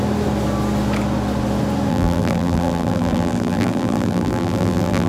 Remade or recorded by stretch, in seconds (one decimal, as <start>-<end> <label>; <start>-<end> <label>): 0.0-1.9 recorded; 1.9-5.1 remade